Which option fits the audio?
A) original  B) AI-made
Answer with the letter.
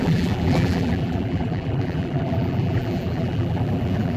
B